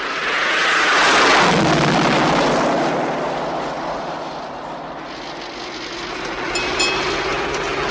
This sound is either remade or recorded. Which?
recorded